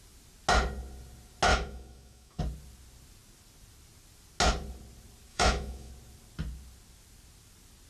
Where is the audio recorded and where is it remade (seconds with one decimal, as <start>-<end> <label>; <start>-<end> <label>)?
0.0-1.5 recorded; 1.5-2.4 remade; 2.4-5.3 recorded; 5.3-5.9 remade; 5.9-7.9 recorded